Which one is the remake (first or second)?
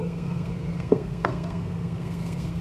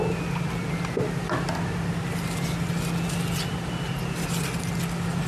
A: first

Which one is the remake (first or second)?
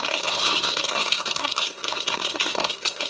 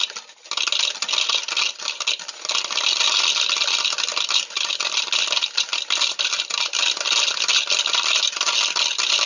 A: first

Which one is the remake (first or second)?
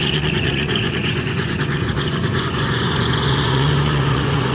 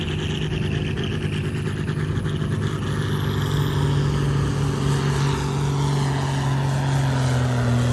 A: first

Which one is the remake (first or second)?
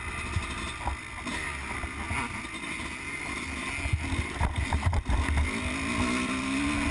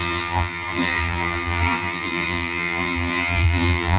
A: second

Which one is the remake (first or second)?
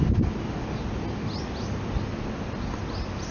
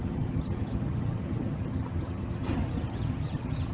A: second